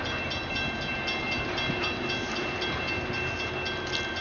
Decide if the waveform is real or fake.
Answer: real